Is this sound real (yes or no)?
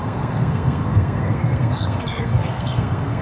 no